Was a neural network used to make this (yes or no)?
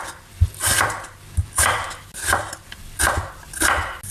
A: no